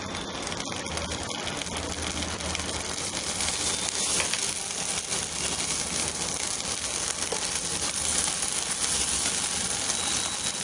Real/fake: real